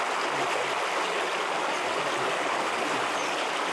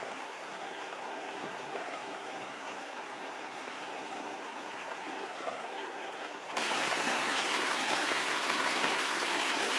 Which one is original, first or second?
first